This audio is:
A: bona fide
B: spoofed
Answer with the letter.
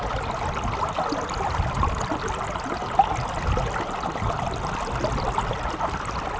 A